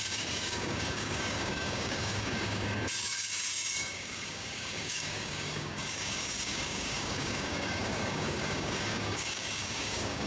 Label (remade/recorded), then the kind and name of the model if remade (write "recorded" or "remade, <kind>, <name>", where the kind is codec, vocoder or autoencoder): remade, codec, DAC